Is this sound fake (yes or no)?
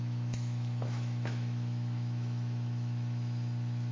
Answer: yes